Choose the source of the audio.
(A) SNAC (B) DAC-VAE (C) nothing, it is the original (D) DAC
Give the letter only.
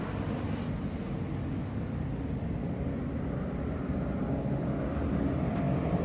C